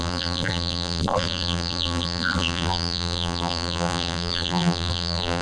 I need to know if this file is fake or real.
fake